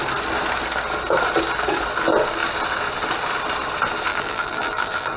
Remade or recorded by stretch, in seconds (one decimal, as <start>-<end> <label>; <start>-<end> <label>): 0.0-4.1 recorded; 4.1-5.2 remade